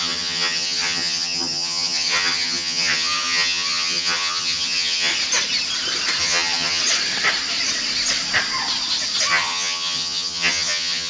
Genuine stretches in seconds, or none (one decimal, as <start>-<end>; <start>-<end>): 5.1-6.2; 6.8-9.3